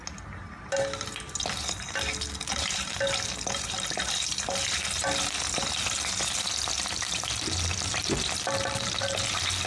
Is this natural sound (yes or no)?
yes